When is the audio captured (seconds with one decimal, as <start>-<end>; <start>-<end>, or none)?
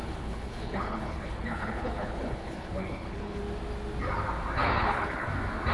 3.4-4.6; 5.3-5.7